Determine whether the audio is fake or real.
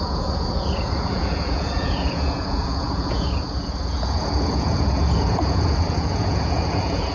fake